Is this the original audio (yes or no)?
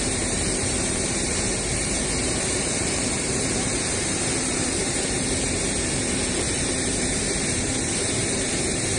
no